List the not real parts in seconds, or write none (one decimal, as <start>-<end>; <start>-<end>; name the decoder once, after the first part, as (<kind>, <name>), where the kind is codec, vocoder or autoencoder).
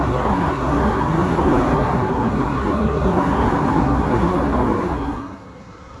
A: 0.0-6.0 (codec, SNAC)